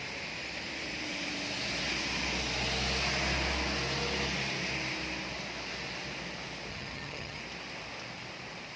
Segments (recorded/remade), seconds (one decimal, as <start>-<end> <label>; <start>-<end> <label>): 0.0-6.7 recorded; 6.7-7.4 remade; 7.4-8.8 recorded